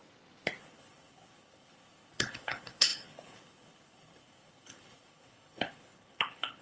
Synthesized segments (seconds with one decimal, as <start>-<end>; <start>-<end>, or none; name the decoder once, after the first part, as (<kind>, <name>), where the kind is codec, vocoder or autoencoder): 0.6-6.6 (codec, HILCodec)